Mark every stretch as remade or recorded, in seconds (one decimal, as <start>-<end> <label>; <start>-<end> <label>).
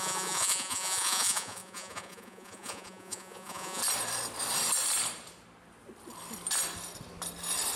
0.0-3.8 remade; 3.8-7.8 recorded